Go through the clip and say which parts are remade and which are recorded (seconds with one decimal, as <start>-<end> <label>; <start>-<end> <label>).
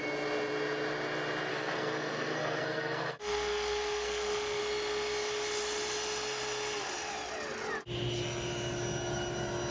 0.0-1.5 recorded; 1.5-4.6 remade; 4.6-9.7 recorded